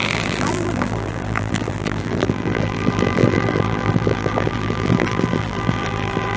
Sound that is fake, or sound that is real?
fake